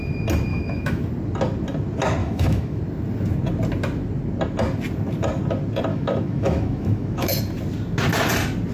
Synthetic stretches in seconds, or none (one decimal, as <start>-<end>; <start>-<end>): 0.5-1.1; 2.2-2.8; 5.9-7.4